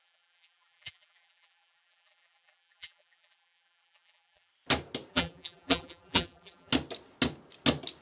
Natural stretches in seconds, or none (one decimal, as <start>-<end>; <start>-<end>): 4.5-5.1; 6.7-8.0